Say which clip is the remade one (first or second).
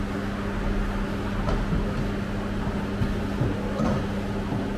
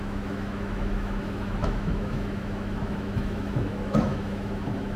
second